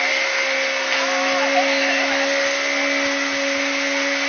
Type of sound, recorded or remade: recorded